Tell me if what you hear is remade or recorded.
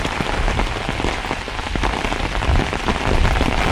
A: recorded